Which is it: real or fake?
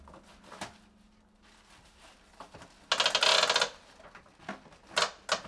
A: real